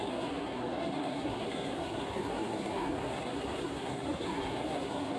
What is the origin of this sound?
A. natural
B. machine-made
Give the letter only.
B